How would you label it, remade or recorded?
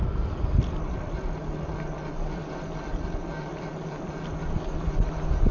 recorded